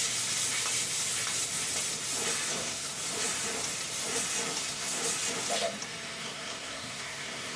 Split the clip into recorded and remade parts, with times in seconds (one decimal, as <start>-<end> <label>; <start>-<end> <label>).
0.0-2.5 recorded; 2.5-2.9 remade; 2.9-4.6 recorded; 4.6-5.0 remade; 5.0-6.2 recorded; 6.2-7.6 remade